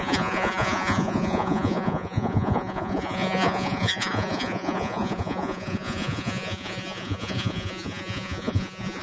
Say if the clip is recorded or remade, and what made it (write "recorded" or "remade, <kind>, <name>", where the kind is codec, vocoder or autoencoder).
remade, vocoder, Vocos